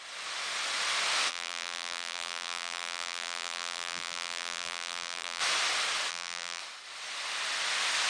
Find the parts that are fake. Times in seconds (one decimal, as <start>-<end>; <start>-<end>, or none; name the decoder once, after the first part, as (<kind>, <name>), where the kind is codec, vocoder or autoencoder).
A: 1.3-5.4 (vocoder, BigVGAN v2); 6.1-6.6

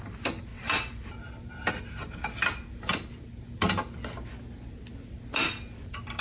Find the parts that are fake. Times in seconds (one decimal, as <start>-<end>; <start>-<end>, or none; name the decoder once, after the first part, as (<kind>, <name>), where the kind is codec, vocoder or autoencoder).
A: none

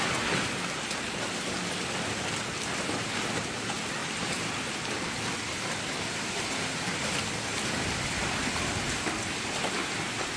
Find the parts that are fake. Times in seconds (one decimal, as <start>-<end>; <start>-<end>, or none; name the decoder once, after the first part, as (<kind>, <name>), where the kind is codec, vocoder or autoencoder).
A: 4.0-4.5 (vocoder, BigVGAN v2); 7.5-9.0

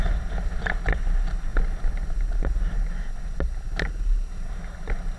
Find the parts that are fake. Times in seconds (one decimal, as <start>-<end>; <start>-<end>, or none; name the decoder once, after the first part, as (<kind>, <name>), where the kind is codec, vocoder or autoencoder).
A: none

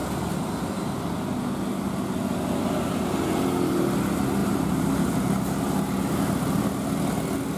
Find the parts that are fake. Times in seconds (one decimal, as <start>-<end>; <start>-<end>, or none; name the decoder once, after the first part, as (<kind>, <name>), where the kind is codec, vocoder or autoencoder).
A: 4.4-6.6 (vocoder, BigVGAN v2)

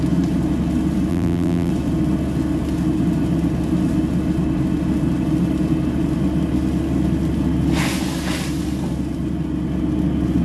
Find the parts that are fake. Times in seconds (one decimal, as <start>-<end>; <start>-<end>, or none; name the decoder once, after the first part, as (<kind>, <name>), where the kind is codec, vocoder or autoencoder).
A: 1.1-1.7 (vocoder, BigVGAN v2)

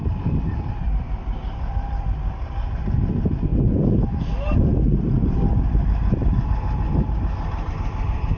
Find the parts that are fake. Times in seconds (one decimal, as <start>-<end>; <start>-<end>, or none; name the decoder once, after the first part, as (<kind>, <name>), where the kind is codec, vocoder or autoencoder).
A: 0.0-3.5 (vocoder, BigVGAN v2); 7.7-8.4